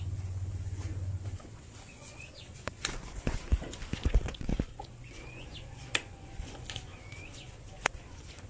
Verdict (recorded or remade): remade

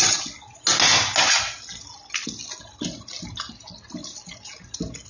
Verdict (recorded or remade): recorded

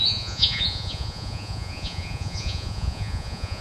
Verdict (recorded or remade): remade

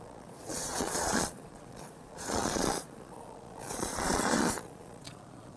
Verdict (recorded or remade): remade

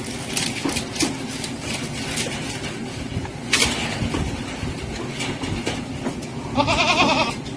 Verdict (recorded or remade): recorded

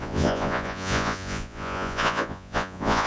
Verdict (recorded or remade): remade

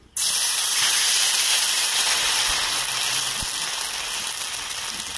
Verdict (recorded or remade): recorded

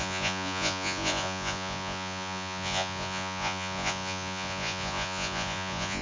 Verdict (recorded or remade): remade